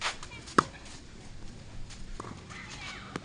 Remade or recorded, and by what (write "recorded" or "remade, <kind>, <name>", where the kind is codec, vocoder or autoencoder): recorded